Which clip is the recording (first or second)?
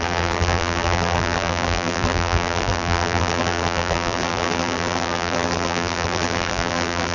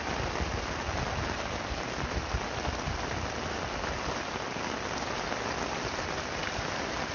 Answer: second